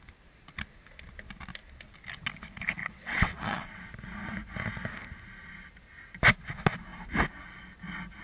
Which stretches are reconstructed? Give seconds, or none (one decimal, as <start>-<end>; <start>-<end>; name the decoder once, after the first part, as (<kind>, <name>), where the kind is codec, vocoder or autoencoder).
2.8-3.9 (vocoder, WaveNeXt)